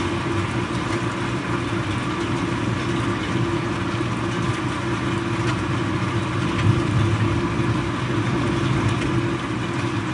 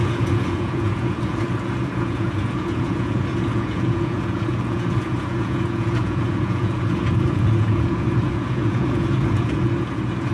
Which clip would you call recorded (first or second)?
first